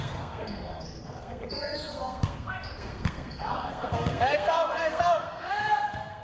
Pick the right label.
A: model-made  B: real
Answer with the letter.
A